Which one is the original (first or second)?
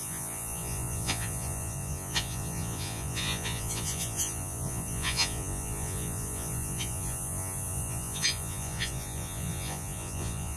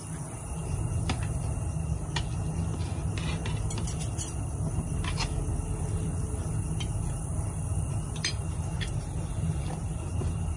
second